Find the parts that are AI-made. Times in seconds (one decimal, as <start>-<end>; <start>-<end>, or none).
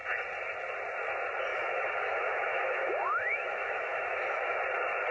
1.5-4.6